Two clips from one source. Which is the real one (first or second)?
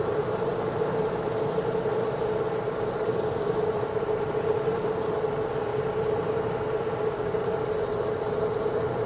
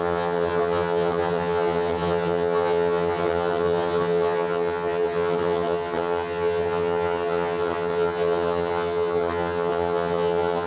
first